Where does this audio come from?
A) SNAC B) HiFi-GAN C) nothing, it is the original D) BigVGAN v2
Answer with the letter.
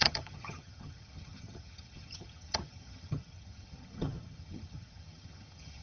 B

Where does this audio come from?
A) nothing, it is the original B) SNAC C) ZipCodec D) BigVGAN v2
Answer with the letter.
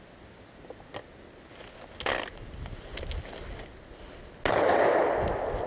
A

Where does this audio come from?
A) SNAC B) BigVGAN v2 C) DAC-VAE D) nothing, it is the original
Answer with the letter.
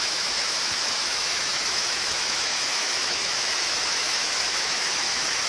C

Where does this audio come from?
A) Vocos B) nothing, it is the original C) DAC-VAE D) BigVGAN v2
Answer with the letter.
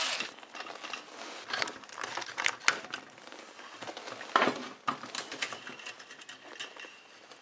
B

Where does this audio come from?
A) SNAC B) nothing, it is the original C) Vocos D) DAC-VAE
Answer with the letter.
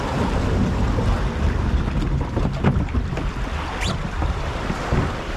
B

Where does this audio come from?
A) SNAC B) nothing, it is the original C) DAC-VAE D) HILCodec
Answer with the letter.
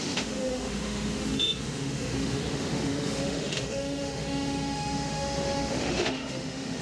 C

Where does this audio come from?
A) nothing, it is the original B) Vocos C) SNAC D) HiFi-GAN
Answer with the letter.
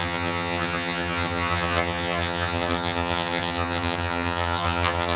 D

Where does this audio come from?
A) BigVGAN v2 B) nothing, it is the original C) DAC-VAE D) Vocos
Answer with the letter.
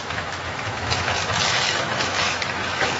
C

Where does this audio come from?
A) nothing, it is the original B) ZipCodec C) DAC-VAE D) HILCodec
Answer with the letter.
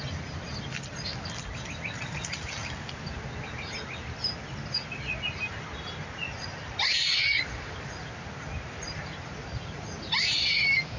A